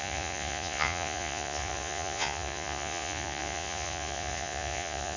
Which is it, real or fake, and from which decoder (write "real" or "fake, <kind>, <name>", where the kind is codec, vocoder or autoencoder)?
fake, vocoder, Vocos